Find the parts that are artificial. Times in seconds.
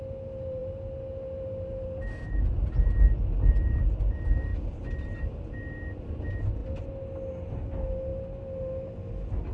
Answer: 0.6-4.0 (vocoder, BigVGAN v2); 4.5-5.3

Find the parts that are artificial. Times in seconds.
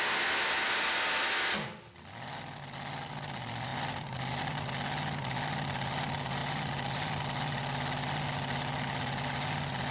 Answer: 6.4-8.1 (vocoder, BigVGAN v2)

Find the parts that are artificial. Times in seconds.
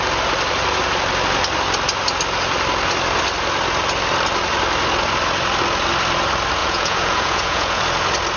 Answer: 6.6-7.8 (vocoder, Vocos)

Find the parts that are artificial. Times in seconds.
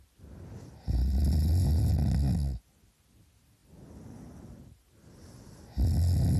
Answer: none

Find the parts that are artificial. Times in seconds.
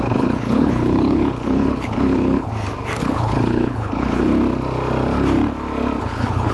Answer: 0.0-2.5 (codec, HILCodec); 3.0-4.3; 6.0-6.5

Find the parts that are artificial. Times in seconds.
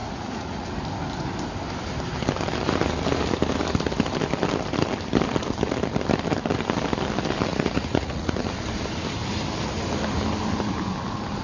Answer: 0.0-0.7 (vocoder, Vocos); 7.5-8.4